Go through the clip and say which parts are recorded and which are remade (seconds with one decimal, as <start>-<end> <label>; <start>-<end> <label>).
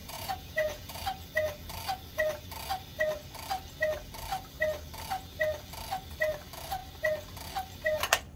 0.0-1.0 remade; 1.0-8.4 recorded